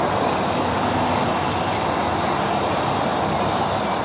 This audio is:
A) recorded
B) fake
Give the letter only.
A